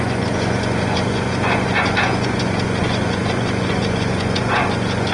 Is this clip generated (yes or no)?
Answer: yes